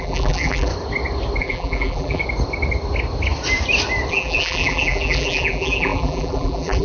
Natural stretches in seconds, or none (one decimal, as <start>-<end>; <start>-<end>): 0.7-1.4; 2.2-4.1